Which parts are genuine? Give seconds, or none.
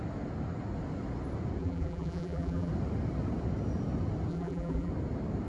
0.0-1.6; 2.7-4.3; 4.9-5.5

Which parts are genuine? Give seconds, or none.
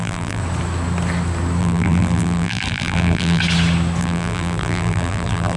0.4-1.6; 3.4-4.0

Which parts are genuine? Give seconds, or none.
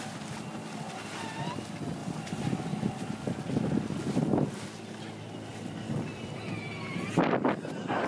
0.0-2.0; 2.6-5.5; 7.5-8.1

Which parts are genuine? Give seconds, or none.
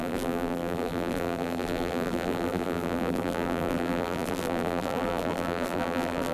none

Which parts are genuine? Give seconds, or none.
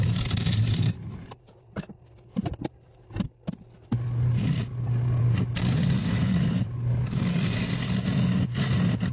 0.0-9.1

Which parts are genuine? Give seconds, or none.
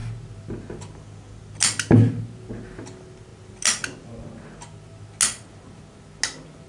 0.0-6.7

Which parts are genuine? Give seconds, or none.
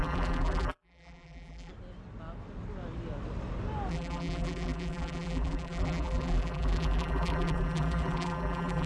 1.7-3.9